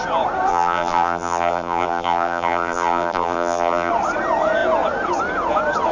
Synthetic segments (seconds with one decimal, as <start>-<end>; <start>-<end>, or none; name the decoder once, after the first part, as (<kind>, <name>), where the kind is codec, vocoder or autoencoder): 0.5-3.9 (vocoder, BigVGAN v2)